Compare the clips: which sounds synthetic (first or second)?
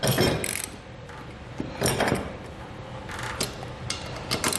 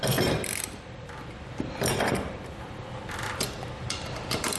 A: second